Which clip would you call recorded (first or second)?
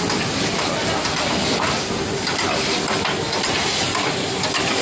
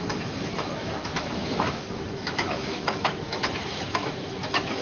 first